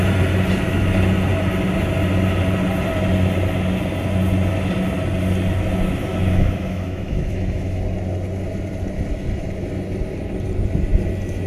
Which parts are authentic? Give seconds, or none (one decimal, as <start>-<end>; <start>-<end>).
0.0-6.1; 7.8-11.5